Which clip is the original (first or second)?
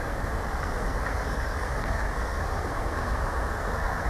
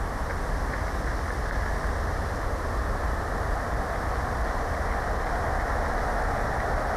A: second